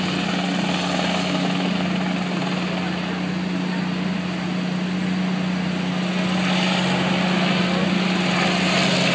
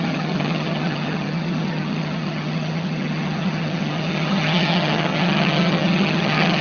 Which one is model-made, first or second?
second